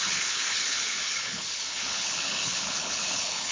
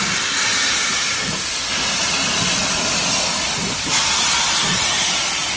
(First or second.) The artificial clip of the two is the first